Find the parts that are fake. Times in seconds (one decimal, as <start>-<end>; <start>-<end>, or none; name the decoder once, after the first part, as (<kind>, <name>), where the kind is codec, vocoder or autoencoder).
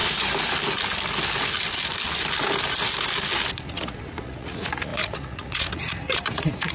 3.7-6.7 (vocoder, Vocos)